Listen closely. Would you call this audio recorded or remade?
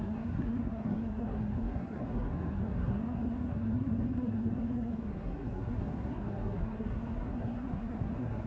remade